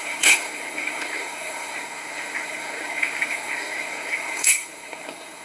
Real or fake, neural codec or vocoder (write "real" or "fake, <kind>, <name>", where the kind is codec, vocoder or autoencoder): fake, codec, SNAC